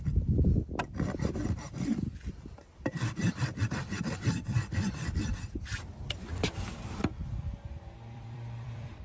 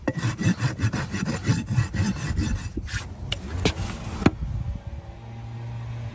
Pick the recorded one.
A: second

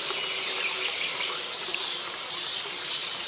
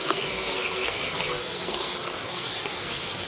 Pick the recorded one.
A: first